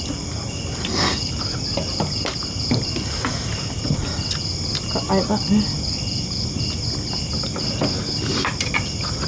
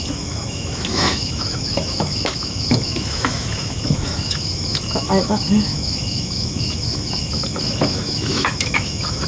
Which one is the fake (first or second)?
second